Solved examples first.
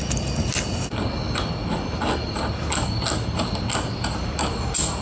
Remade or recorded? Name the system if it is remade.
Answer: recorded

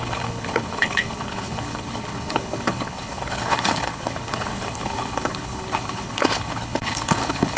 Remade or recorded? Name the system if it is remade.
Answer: remade, codec, HILCodec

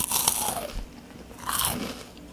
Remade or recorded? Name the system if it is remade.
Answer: recorded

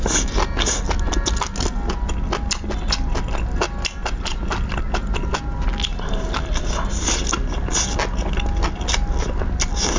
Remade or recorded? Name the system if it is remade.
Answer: recorded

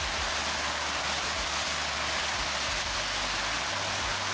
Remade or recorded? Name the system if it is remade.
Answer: recorded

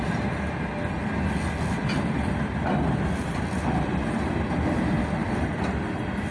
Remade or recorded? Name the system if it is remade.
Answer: recorded